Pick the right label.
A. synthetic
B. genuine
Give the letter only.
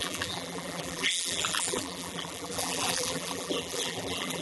A